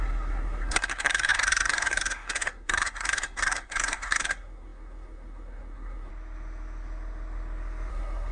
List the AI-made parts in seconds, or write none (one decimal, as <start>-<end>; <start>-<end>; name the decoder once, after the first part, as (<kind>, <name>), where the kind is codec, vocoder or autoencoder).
0.0-6.1 (codec, SNAC); 7.9-8.3